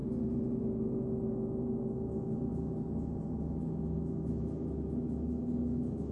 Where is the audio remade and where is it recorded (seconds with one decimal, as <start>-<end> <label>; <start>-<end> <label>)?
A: 0.0-0.6 recorded; 0.6-2.5 remade; 2.5-3.3 recorded; 3.3-6.1 remade